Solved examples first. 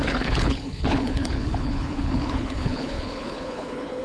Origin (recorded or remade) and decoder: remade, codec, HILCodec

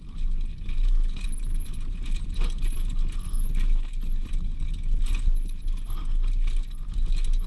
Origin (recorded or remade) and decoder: recorded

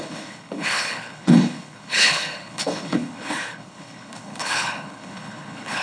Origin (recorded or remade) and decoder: remade, codec, HILCodec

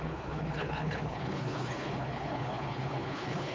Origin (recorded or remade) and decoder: remade, codec, HILCodec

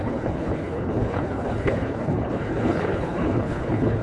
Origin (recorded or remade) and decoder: remade, codec, HILCodec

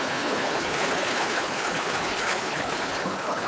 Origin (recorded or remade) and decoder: remade, codec, HILCodec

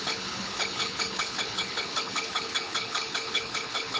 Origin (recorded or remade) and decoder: remade, codec, HILCodec